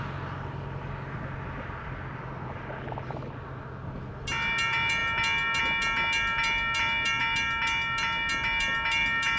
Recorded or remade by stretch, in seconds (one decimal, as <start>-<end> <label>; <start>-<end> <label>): 0.0-9.4 recorded